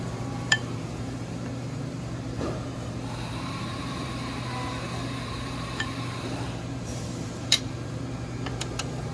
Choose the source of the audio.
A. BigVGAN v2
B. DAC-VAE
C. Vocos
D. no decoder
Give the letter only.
A